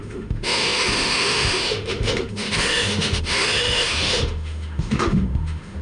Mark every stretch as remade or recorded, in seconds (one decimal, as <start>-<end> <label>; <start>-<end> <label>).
0.0-5.8 remade